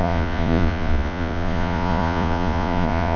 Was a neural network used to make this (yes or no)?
yes